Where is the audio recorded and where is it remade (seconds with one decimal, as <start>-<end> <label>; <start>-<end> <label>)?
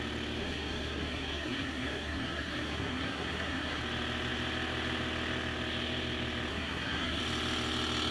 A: 0.0-0.4 recorded; 0.4-3.8 remade; 3.8-6.5 recorded; 6.5-7.2 remade; 7.2-8.1 recorded